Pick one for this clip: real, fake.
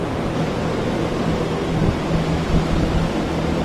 real